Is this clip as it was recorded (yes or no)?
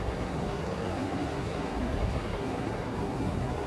no